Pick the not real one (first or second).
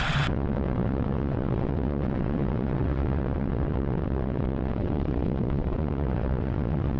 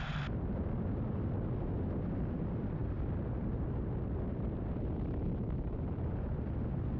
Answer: first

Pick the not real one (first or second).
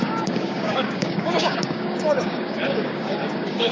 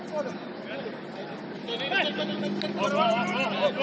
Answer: first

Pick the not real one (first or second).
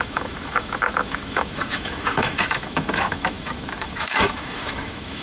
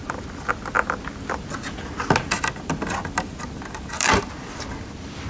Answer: first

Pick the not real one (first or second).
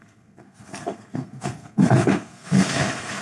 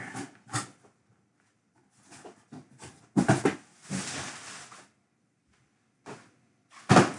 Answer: first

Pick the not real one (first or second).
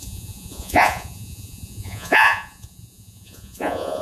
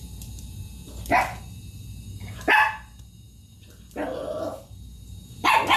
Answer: first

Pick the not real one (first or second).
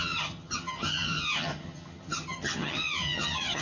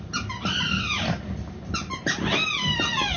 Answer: first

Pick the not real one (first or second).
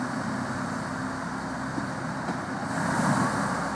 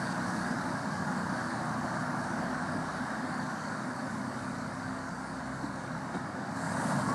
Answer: second